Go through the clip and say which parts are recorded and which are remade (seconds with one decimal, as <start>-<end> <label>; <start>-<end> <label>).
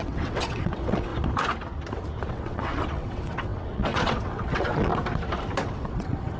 0.0-1.1 remade; 1.1-2.3 recorded; 2.3-4.9 remade; 4.9-5.6 recorded; 5.6-6.4 remade